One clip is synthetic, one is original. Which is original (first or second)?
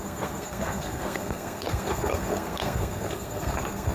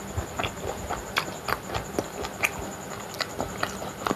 second